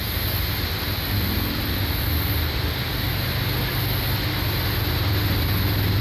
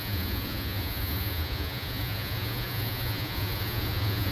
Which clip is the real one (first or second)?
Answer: first